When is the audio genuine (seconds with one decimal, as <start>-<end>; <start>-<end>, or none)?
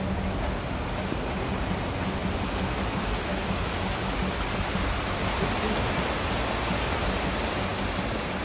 0.0-8.4